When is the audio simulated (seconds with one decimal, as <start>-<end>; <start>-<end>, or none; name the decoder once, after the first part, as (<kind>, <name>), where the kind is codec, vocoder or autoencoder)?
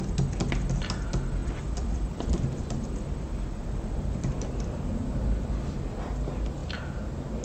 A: 1.4-5.1 (vocoder, BigVGAN v2)